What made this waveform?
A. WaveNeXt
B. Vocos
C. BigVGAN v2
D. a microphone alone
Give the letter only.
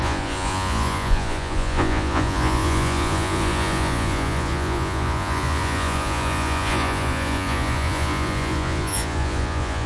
B